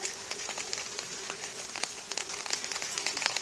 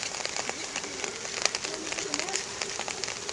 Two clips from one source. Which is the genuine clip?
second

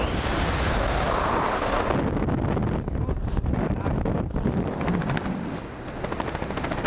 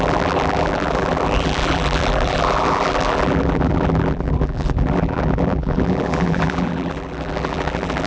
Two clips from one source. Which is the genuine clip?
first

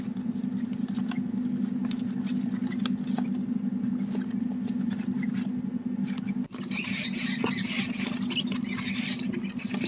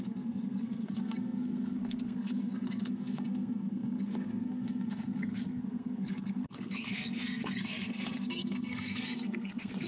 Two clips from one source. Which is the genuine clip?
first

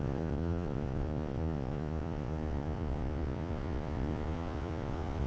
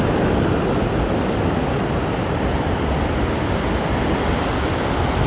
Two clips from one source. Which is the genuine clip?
second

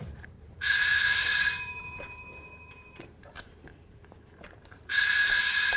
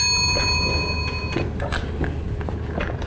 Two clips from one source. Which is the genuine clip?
second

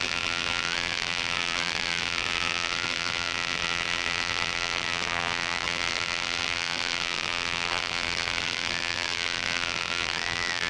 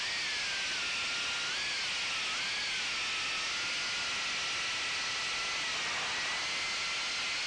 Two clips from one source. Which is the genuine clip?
second